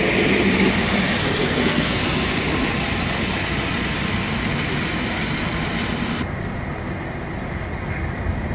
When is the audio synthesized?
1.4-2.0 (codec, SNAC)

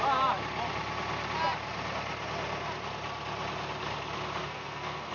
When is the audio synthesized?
4.4-5.1 (codec, SNAC)

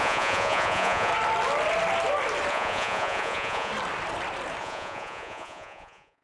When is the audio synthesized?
0.0-1.1 (vocoder, Vocos); 2.5-3.7; 4.6-6.2

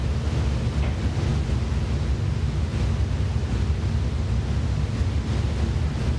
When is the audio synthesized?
none

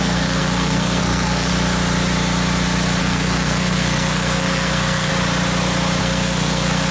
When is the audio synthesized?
0.0-1.5 (codec, SNAC); 3.0-5.1; 6.0-6.9

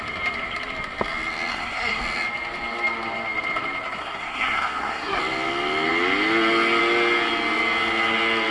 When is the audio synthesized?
1.5-2.0 (codec, SNAC); 4.0-5.2

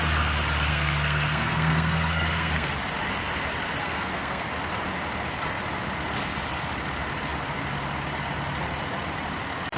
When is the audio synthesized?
0.7-2.7 (codec, SNAC); 3.8-4.5